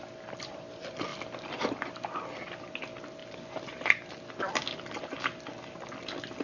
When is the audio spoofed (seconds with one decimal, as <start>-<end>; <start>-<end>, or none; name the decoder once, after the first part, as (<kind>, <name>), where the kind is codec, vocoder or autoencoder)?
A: none